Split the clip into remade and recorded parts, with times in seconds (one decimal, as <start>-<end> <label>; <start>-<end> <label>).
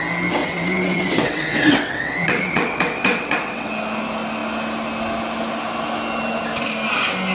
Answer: 0.0-0.4 recorded; 0.4-3.7 remade; 3.7-7.3 recorded